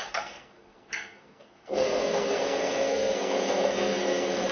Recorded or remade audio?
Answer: remade